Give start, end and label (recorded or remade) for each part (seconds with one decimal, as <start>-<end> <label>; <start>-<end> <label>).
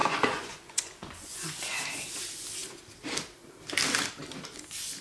0.0-1.8 remade; 1.8-5.0 recorded